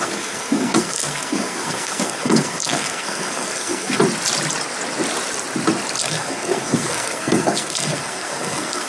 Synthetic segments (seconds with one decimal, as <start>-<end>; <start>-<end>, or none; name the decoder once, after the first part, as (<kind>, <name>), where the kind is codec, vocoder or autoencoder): 0.0-4.0 (codec, SNAC); 6.0-8.9